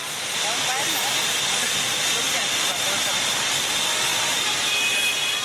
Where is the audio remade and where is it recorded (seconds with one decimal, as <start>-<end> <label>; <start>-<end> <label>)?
0.0-2.1 remade; 2.1-4.1 recorded; 4.1-4.7 remade; 4.7-5.4 recorded